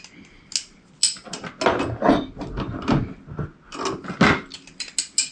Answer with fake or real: real